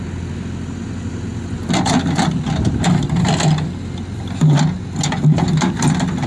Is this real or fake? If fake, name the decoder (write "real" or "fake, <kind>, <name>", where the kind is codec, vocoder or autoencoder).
real